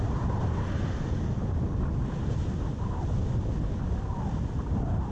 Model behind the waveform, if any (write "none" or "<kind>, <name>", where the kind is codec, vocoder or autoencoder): none